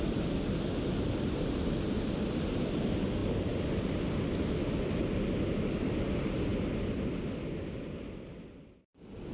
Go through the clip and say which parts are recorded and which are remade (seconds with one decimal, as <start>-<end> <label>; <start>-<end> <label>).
0.0-3.2 recorded; 3.2-4.0 remade; 4.0-9.3 recorded